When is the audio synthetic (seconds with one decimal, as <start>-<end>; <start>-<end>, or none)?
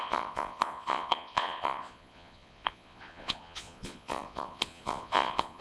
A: 0.0-5.6